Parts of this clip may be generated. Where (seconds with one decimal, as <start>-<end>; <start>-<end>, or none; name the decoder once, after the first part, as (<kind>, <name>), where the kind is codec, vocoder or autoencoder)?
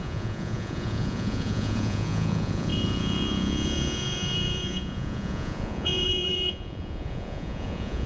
0.0-8.1 (vocoder, Vocos)